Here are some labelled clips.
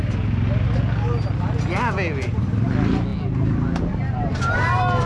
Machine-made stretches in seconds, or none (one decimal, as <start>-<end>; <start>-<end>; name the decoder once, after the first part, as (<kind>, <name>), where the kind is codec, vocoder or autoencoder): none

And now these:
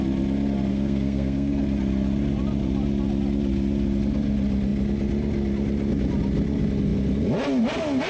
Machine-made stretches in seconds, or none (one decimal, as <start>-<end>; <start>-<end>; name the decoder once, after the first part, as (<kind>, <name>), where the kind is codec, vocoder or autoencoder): 0.7-1.6 (codec, SNAC)

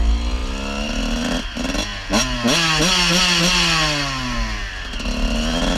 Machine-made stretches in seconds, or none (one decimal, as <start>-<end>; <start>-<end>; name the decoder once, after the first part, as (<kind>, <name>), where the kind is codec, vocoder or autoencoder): none

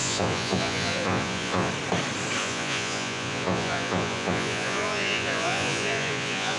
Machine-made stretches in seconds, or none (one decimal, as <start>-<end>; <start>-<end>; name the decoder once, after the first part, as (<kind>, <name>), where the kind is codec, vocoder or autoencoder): 0.0-1.7 (vocoder, Vocos); 2.4-6.6

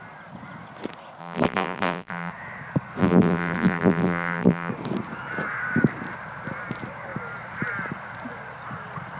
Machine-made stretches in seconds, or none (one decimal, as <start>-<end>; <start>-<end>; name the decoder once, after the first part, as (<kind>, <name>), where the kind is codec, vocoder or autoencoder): 1.2-2.3 (vocoder, BigVGAN v2); 3.0-4.7

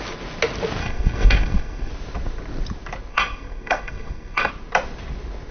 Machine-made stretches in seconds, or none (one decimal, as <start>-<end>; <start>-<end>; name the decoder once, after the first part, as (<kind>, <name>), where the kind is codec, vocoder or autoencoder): 0.8-1.9 (codec, SNAC); 3.1-4.5